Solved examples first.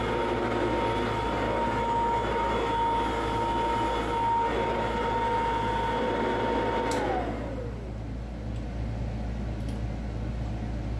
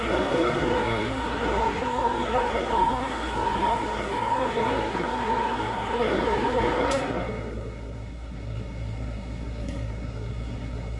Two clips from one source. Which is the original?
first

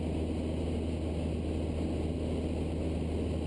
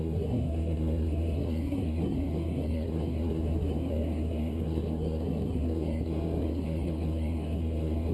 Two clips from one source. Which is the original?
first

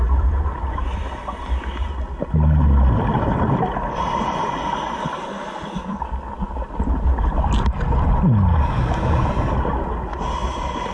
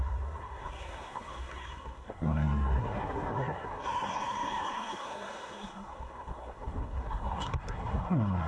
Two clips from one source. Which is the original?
first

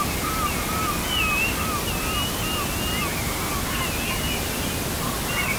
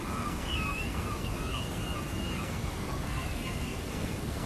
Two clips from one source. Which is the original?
first